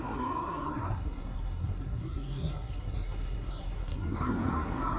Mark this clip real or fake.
fake